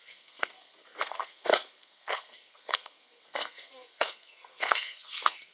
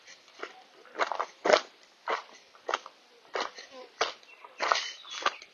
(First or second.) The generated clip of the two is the first